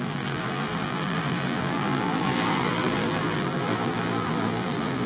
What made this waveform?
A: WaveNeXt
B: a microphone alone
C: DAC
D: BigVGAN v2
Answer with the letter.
D